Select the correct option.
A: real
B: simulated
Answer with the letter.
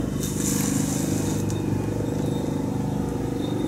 A